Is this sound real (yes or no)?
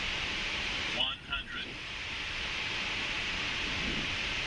no